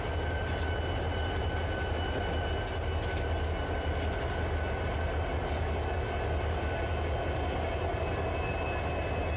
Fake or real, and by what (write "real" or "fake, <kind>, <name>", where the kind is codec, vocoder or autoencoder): real